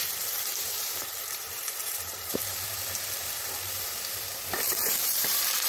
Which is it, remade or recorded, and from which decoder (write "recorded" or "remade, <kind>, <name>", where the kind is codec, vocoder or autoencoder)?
remade, vocoder, BigVGAN v2